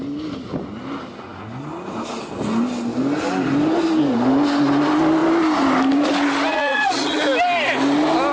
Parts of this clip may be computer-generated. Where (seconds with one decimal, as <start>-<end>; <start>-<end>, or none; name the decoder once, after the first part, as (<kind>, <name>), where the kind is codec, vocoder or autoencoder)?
6.5-7.2 (vocoder, Vocos)